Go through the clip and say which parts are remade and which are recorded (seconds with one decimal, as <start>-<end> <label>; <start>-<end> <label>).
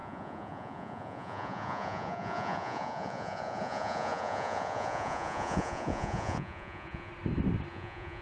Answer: 0.0-7.1 remade; 7.1-7.7 recorded; 7.7-8.2 remade